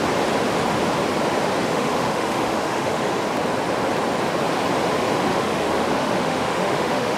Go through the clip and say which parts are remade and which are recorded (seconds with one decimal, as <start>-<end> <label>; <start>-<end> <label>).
0.0-1.7 recorded; 1.7-3.1 remade; 3.1-5.3 recorded; 5.3-7.2 remade